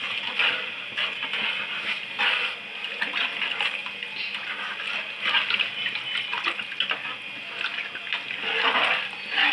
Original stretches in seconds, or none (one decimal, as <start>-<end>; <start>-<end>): 0.0-9.5